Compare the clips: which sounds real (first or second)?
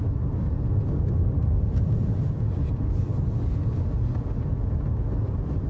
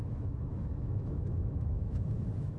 first